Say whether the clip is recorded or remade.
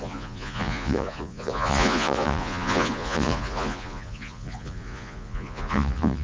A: remade